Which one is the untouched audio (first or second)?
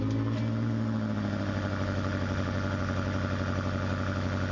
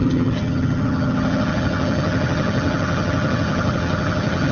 first